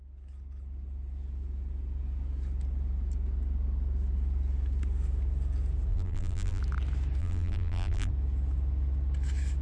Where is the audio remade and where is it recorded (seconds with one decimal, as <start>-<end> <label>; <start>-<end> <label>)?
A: 0.0-5.9 recorded; 5.9-6.6 remade; 6.6-7.2 recorded; 7.2-8.1 remade; 8.1-9.6 recorded